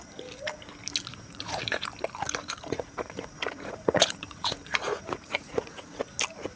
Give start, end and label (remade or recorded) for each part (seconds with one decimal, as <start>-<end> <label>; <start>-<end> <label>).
0.0-1.1 recorded; 1.1-1.6 remade; 1.6-2.4 recorded; 2.4-6.0 remade; 6.0-6.6 recorded